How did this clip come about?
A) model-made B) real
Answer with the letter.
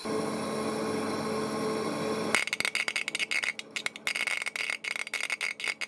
B